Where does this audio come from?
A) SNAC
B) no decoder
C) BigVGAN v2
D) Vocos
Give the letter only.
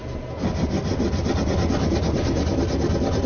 B